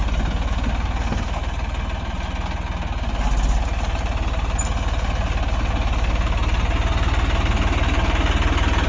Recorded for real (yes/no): yes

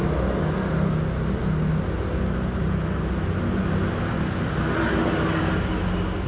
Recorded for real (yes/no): yes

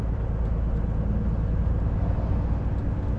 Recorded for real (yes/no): yes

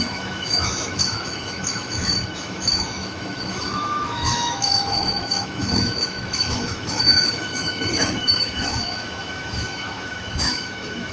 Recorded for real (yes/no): no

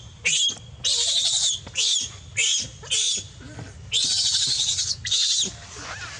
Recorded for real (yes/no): yes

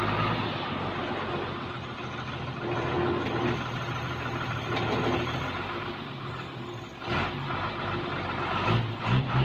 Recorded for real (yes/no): yes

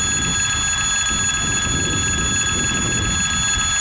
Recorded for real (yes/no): yes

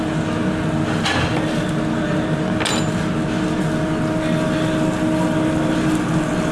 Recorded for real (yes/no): yes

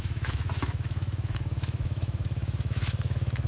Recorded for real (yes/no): no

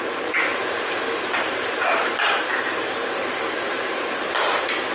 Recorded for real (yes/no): no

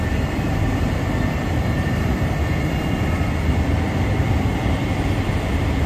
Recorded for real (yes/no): no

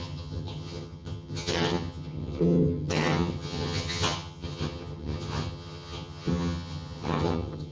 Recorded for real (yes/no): no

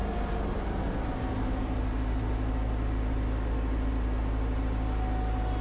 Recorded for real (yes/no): yes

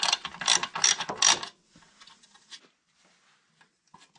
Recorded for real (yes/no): yes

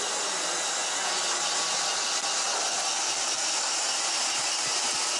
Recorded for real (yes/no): yes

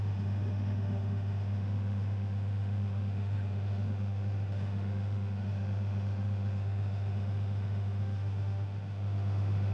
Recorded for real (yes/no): no